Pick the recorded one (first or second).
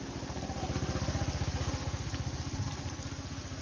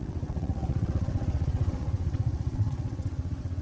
first